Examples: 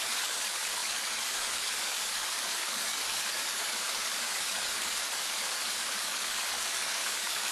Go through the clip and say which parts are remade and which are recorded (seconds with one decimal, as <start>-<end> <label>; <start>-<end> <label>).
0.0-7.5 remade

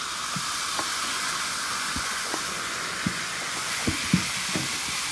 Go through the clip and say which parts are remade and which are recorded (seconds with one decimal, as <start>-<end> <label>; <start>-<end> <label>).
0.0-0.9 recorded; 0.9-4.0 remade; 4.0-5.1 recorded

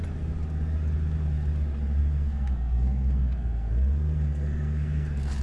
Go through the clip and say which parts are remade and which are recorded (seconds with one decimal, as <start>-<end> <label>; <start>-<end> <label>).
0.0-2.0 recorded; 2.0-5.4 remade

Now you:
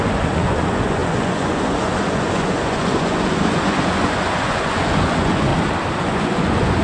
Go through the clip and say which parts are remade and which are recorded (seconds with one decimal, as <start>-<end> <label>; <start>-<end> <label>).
0.0-5.5 remade; 5.5-6.0 recorded; 6.0-6.8 remade